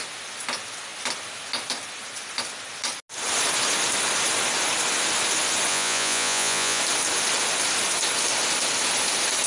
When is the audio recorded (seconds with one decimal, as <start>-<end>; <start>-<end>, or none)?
0.0-5.7; 6.8-9.5